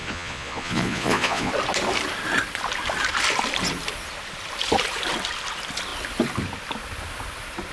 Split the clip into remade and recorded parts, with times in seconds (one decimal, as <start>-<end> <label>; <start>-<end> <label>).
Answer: 0.0-1.5 remade; 1.5-7.7 recorded